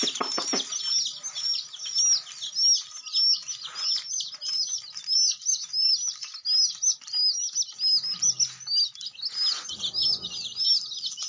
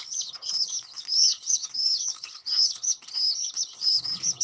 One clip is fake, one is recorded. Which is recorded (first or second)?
first